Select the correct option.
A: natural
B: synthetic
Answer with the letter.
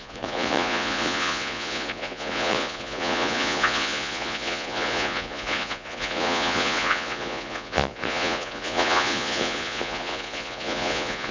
B